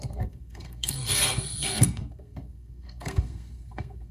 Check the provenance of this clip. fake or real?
fake